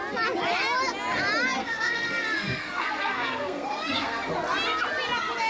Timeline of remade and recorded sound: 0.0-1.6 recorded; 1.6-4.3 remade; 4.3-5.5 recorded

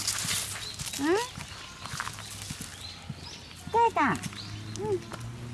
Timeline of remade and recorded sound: 0.0-5.5 recorded

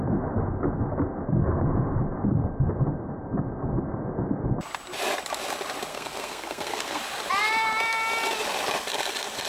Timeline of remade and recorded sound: 0.0-5.9 recorded; 5.9-7.0 remade; 7.0-9.5 recorded

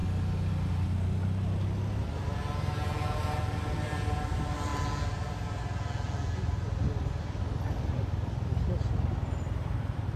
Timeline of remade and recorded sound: 0.0-10.2 recorded

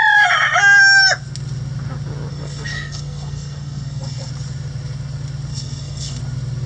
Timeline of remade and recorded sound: 0.0-2.3 recorded; 2.3-4.3 remade; 4.3-5.5 recorded; 5.5-6.2 remade; 6.2-6.7 recorded

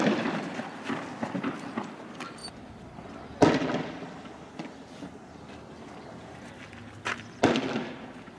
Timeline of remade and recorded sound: 0.0-8.4 recorded

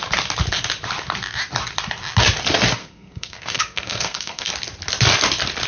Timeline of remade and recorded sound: 0.0-2.8 recorded; 2.8-4.5 remade; 4.5-5.7 recorded

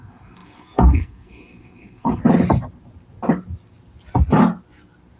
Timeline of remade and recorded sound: 0.0-2.2 remade; 2.2-5.2 recorded